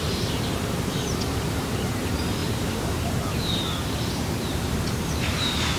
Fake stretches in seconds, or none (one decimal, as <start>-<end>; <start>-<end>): 0.0-5.8

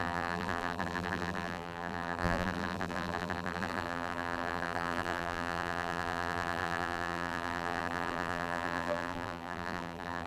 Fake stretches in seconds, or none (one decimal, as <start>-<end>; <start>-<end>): 0.0-10.3

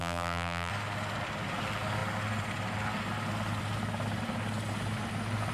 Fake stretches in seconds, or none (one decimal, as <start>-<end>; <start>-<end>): 0.0-0.7

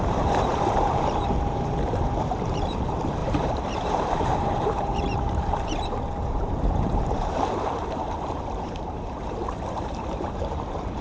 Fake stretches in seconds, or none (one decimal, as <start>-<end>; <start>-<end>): 0.0-11.0

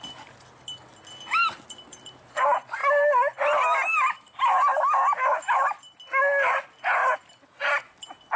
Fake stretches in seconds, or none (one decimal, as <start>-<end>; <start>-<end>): 1.9-2.4; 7.0-8.0

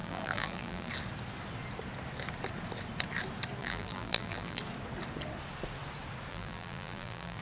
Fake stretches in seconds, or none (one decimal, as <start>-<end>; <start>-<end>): 0.0-0.9; 3.6-4.6; 6.3-7.4